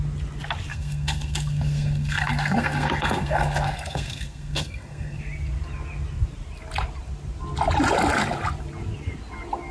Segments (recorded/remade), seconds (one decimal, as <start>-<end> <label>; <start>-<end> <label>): 0.0-0.7 recorded; 0.7-5.2 remade; 5.2-9.7 recorded